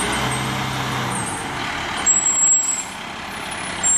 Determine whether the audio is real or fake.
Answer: real